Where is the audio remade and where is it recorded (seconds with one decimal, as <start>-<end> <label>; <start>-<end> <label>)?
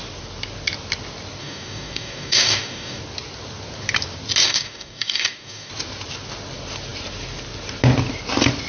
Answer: 0.0-1.4 recorded; 1.4-3.0 remade; 3.0-4.4 recorded; 4.4-5.7 remade; 5.7-8.7 recorded